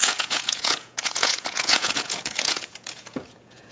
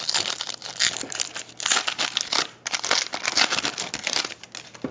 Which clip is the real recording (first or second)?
second